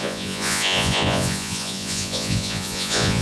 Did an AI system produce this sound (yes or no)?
yes